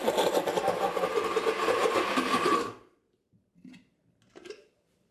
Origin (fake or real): real